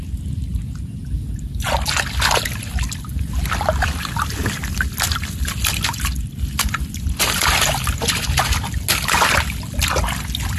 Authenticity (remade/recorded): recorded